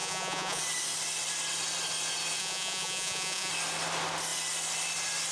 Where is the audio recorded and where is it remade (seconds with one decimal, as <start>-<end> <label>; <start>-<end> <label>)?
0.0-0.6 remade; 0.6-2.4 recorded; 2.4-3.5 remade; 3.5-5.3 recorded

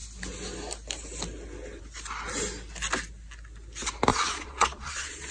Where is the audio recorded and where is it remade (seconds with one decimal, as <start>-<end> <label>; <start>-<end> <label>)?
0.0-4.1 recorded; 4.1-5.3 remade

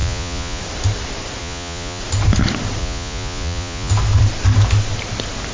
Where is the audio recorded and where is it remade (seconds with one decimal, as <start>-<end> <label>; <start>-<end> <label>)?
0.0-0.6 remade; 0.6-1.4 recorded; 1.4-2.0 remade; 2.0-2.8 recorded; 2.8-3.9 remade; 3.9-5.5 recorded

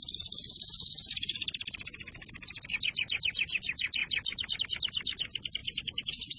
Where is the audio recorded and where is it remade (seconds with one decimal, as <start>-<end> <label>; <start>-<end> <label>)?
0.0-5.6 recorded; 5.6-6.4 remade